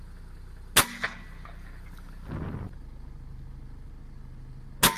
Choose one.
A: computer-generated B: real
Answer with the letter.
B